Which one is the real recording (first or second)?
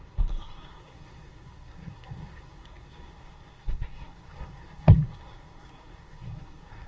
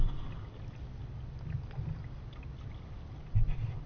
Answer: second